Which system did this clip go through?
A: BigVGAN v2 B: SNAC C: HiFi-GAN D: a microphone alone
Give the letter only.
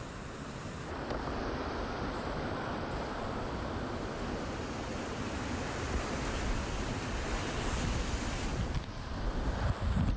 D